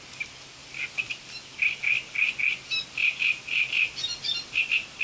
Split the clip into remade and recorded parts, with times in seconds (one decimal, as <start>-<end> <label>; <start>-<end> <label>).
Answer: 0.0-5.0 recorded